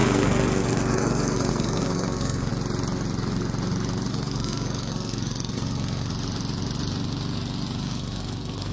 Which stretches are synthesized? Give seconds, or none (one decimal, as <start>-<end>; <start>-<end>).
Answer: 0.0-2.5; 4.1-6.1; 7.8-8.7